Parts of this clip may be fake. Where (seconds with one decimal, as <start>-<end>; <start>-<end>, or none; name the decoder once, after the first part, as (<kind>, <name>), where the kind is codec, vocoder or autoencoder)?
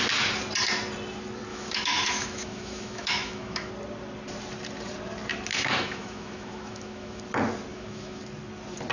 1.5-3.7 (autoencoder, DAC-VAE); 5.5-7.2; 7.7-8.2